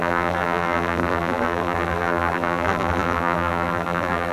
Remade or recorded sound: remade